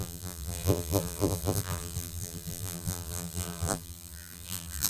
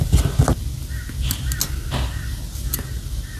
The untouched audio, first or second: second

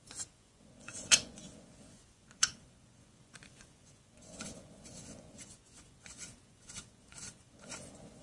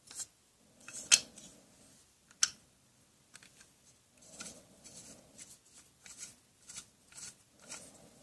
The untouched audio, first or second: second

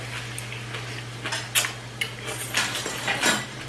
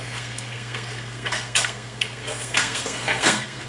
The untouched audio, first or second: first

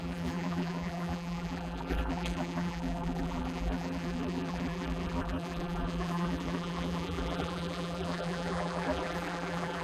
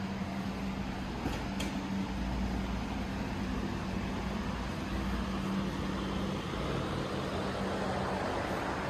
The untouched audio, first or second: second